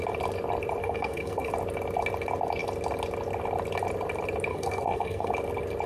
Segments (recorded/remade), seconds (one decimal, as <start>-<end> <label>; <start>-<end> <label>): 0.0-0.8 recorded; 0.8-1.5 remade; 1.5-4.5 recorded; 4.5-5.3 remade; 5.3-5.9 recorded